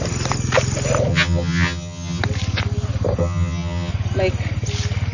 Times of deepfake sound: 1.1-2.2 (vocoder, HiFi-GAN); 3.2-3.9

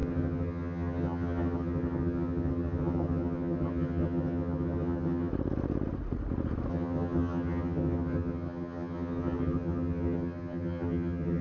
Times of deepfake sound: 0.0-5.3 (vocoder, HiFi-GAN); 6.7-11.4

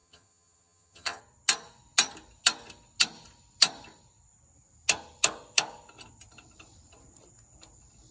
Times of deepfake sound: 0.0-1.2 (vocoder, HiFi-GAN)

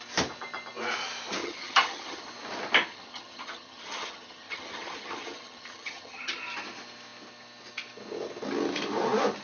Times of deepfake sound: 1.4-2.3 (vocoder, HiFi-GAN); 2.9-6.4

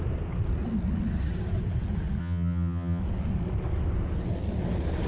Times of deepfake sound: 2.2-3.0 (vocoder, HiFi-GAN)